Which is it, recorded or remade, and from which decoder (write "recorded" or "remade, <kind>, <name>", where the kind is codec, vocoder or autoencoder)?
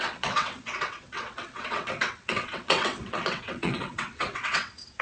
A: remade, vocoder, WaveNeXt